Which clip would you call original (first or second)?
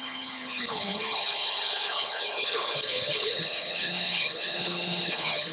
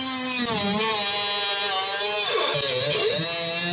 second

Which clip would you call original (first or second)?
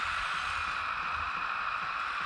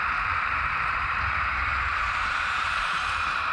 first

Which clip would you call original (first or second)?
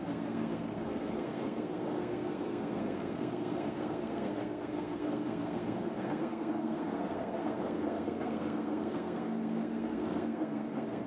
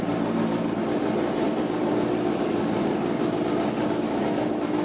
second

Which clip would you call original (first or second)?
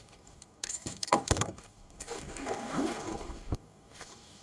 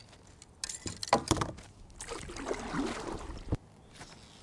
second